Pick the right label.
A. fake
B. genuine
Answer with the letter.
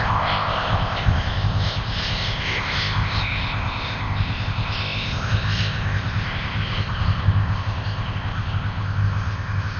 A